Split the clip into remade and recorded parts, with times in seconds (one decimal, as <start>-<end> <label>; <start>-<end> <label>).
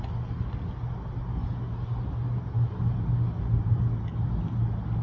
0.0-5.0 recorded